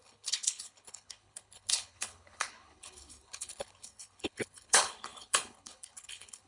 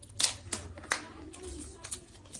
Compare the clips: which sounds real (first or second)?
second